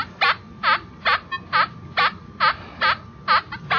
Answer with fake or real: real